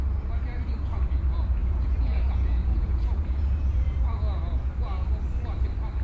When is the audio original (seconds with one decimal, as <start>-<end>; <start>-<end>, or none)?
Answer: 0.0-1.6; 4.4-6.0